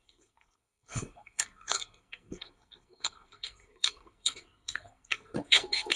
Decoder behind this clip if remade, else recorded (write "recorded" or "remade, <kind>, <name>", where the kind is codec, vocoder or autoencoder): remade, codec, SNAC